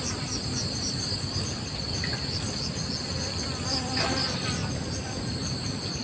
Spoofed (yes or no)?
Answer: no